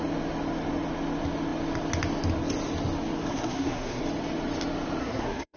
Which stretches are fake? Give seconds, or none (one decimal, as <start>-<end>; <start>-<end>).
3.3-4.0; 5.0-5.6